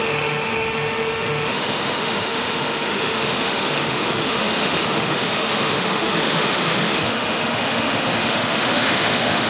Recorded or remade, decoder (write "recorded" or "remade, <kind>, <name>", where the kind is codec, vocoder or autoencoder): remade, autoencoder, DAC-VAE